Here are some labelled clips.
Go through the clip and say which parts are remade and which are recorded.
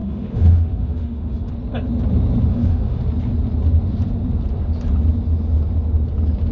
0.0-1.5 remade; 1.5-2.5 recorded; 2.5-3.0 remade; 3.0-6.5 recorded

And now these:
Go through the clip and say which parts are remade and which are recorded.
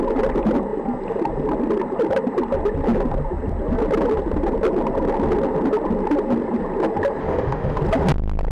0.0-7.2 recorded; 7.2-7.8 remade; 7.8-8.5 recorded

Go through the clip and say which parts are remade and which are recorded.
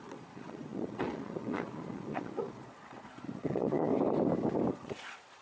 0.0-3.9 remade; 3.9-4.7 recorded; 4.7-5.4 remade